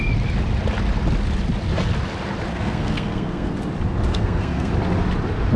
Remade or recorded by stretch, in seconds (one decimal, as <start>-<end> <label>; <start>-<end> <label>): 0.0-2.5 recorded; 2.5-3.5 remade; 3.5-4.1 recorded; 4.1-4.7 remade; 4.7-5.6 recorded